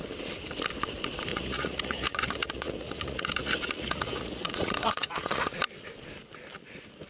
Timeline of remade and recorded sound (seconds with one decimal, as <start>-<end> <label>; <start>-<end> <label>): 0.0-1.3 recorded; 1.3-5.6 remade; 5.6-7.1 recorded